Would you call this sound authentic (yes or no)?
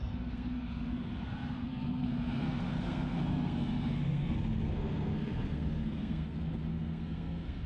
no